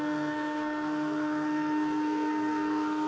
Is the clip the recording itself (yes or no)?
no